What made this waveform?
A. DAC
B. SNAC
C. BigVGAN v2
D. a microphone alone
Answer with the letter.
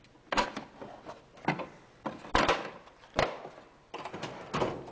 D